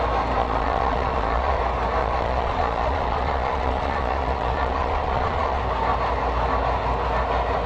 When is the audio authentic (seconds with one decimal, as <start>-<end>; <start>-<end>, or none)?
0.0-0.4; 1.6-2.0; 5.6-7.7